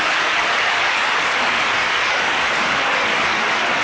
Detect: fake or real fake